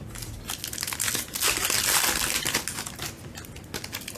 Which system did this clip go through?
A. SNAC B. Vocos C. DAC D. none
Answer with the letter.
D